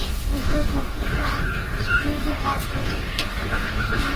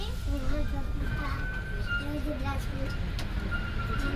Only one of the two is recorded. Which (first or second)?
second